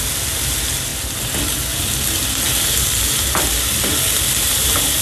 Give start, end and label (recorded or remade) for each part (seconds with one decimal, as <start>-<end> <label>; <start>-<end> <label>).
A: 0.0-5.0 recorded